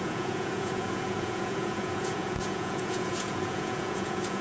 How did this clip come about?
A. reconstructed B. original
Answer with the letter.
A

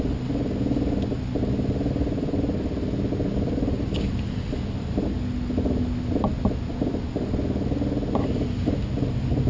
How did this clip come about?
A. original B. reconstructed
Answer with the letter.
A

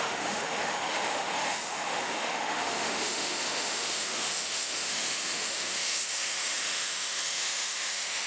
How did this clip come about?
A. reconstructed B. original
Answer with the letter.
A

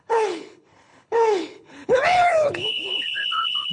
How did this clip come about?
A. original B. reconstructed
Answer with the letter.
B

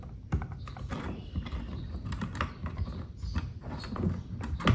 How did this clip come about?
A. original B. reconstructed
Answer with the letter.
A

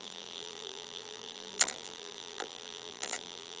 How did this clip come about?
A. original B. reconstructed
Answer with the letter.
B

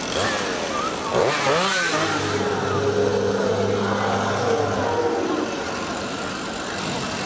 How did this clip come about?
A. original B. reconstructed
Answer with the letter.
A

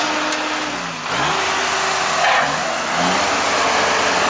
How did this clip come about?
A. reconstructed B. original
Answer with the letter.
B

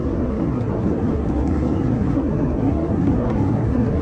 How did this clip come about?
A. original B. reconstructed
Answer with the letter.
B